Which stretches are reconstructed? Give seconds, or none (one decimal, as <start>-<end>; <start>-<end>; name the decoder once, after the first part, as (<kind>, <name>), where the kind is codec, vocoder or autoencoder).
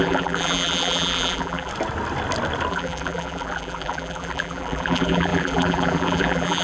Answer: 0.0-1.7 (vocoder, BigVGAN v2); 2.7-6.6